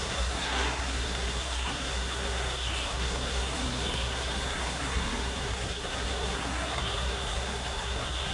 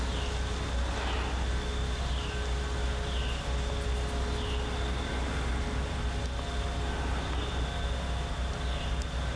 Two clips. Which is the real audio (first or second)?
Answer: second